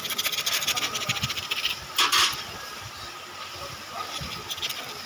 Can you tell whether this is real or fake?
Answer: fake